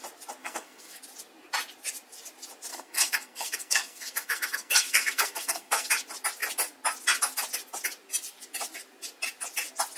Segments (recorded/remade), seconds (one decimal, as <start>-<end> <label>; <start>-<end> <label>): 0.0-0.4 recorded; 0.4-1.0 remade; 1.0-2.7 recorded; 2.7-5.9 remade; 5.9-10.0 recorded